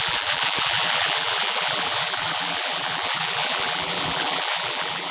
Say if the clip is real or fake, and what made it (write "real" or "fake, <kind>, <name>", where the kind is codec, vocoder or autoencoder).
fake, vocoder, BigVGAN v2